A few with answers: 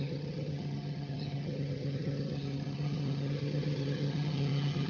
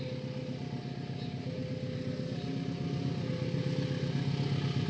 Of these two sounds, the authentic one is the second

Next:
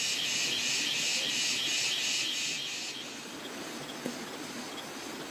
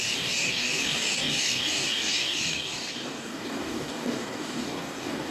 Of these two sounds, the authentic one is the first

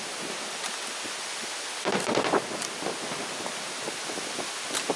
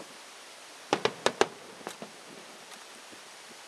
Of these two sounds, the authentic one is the first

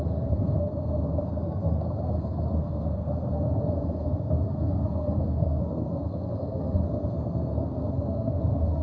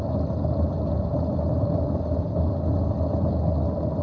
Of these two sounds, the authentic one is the second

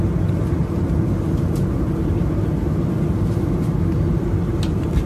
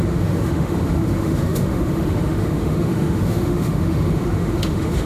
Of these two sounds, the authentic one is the first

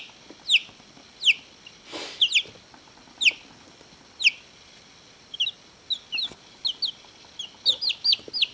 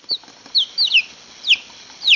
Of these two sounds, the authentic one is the first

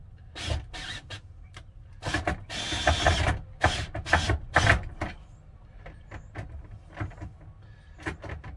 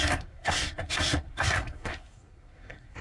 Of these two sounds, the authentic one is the first